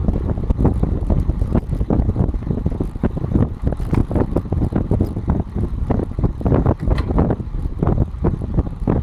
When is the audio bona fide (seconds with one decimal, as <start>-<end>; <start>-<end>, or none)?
0.0-9.0